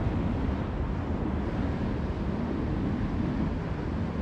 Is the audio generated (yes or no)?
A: no